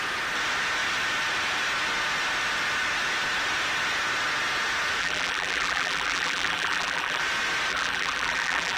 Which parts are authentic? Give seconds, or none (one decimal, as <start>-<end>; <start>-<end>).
0.0-5.0; 7.2-7.7